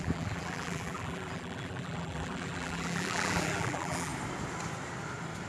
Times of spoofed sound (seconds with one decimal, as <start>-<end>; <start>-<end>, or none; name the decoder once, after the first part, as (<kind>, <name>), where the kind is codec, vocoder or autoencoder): 0.0-4.1 (vocoder, BigVGAN v2)